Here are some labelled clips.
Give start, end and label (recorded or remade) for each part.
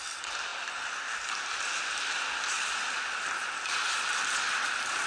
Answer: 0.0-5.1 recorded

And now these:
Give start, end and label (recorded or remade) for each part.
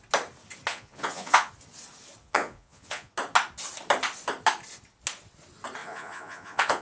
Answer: 0.0-0.7 recorded; 0.7-1.5 remade; 1.5-2.2 recorded; 2.2-3.1 remade; 3.1-5.8 recorded; 5.8-6.8 remade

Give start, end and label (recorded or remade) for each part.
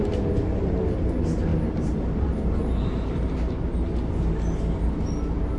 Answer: 0.0-5.6 recorded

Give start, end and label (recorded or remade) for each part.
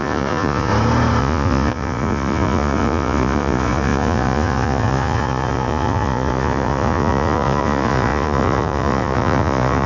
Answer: 0.0-0.7 remade; 0.7-1.2 recorded; 1.2-9.9 remade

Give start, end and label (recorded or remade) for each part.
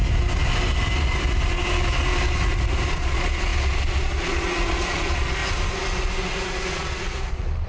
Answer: 0.0-2.9 recorded; 2.9-5.4 remade; 5.4-6.7 recorded; 6.7-7.7 remade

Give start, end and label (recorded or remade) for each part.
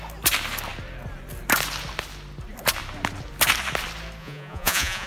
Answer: 0.0-4.2 recorded; 4.2-5.1 remade